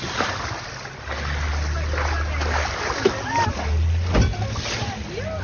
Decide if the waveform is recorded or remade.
recorded